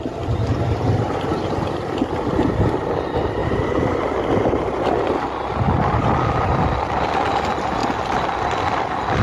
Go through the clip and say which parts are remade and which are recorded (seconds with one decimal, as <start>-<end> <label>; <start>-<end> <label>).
0.0-9.2 recorded